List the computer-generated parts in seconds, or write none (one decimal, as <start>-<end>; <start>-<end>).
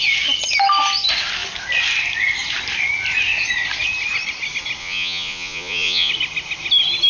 4.8-6.1